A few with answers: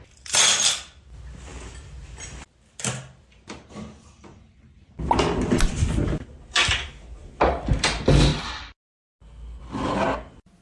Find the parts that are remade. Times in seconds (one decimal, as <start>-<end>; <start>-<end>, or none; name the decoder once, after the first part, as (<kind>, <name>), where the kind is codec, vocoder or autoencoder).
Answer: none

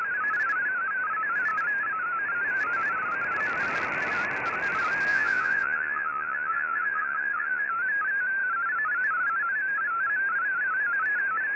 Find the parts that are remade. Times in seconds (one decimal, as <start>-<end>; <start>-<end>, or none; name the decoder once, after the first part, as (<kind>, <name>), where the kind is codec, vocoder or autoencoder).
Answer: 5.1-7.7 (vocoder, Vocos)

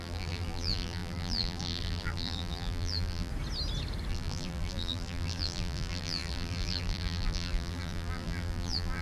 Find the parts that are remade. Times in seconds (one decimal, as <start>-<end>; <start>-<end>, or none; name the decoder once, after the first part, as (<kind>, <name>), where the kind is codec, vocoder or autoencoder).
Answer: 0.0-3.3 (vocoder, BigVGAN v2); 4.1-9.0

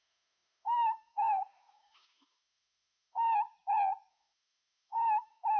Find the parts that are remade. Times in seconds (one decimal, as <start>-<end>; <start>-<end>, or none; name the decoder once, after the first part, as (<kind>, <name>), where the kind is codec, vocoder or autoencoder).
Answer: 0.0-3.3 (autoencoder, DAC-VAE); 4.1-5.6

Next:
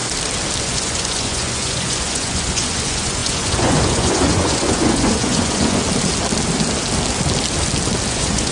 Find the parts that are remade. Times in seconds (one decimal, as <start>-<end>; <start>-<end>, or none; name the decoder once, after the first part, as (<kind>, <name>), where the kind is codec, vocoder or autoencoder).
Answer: 0.6-5.8 (vocoder, Vocos); 8.1-8.5

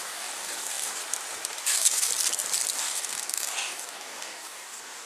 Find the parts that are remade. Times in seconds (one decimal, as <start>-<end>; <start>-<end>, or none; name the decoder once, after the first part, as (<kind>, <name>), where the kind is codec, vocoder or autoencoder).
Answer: 0.0-1.0 (codec, DAC); 1.6-2.1; 2.8-5.1

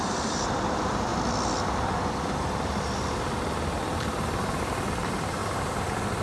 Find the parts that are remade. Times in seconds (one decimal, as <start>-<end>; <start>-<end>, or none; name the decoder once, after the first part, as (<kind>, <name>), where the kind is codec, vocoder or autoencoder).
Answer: 0.0-1.1 (vocoder, BigVGAN v2); 4.6-6.2